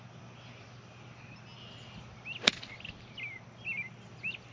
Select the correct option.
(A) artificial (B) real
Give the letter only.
B